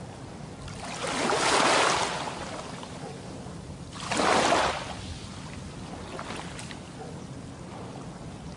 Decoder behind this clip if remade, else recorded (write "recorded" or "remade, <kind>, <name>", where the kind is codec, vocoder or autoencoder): recorded